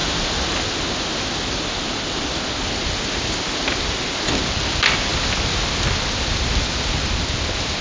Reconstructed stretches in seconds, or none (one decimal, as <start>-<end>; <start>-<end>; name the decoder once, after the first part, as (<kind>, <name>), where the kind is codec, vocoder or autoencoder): none